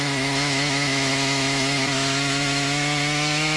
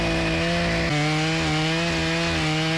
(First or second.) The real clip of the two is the second